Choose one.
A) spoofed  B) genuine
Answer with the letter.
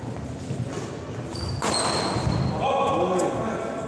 B